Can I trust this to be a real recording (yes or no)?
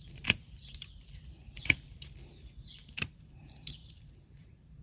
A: no